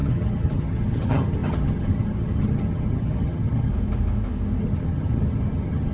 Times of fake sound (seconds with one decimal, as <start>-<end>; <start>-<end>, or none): 0.0-3.7; 4.6-5.9